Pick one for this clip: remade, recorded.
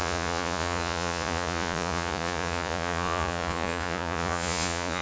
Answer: remade